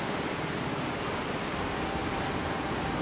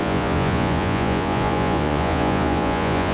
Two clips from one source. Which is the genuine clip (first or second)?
first